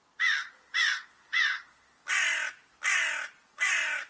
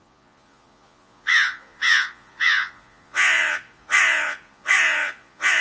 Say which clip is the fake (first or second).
second